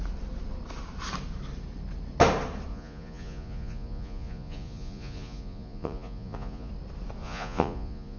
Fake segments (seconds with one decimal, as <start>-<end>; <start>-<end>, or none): 2.7-6.7; 7.2-8.2